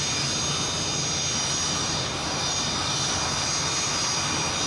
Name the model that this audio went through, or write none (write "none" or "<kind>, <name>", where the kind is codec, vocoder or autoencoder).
none